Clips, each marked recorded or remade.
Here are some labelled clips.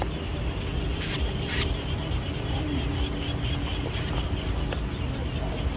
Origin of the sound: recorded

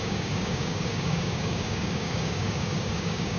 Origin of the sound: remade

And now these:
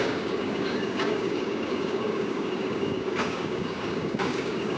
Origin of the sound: remade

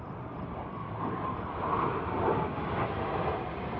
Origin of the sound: recorded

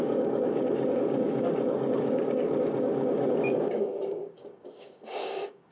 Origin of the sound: remade